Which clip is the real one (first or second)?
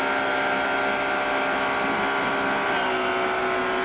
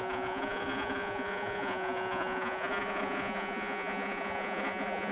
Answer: first